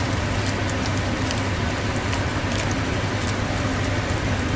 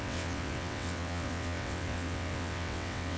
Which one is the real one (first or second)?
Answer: first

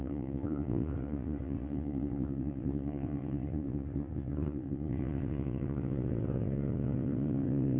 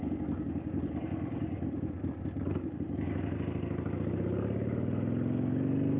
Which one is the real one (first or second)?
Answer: second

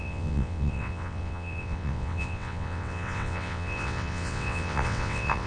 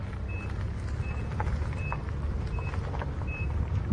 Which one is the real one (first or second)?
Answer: second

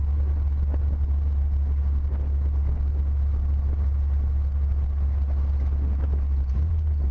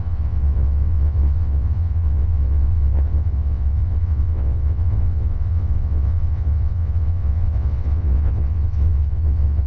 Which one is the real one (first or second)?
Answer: first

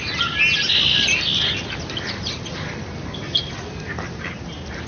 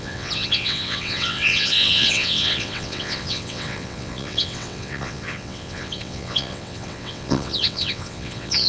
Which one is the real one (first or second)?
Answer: first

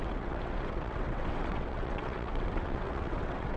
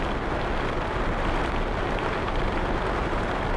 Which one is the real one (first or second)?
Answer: second